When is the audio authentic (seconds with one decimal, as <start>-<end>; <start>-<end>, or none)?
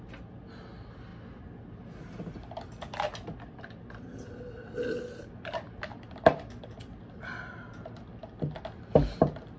0.0-9.6